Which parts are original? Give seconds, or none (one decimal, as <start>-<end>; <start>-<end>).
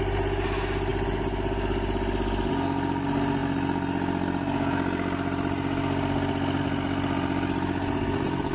0.0-8.5